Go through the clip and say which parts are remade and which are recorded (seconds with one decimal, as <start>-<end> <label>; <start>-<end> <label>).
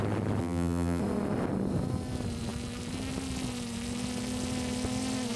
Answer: 0.0-0.4 recorded; 0.4-1.0 remade; 1.0-5.4 recorded